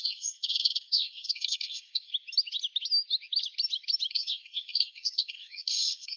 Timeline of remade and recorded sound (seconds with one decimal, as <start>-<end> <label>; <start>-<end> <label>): 0.0-2.1 remade; 2.1-4.1 recorded; 4.1-6.2 remade